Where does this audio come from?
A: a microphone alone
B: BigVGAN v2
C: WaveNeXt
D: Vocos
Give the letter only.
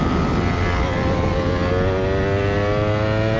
A